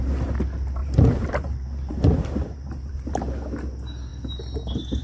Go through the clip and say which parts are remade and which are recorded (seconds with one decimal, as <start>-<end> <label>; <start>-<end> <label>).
0.0-0.8 recorded; 0.8-3.1 remade; 3.1-5.0 recorded